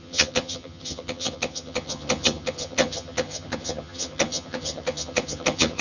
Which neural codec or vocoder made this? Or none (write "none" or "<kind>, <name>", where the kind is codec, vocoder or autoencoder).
vocoder, HiFi-GAN